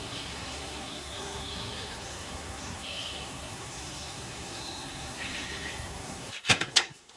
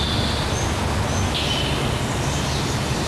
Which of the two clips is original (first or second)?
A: second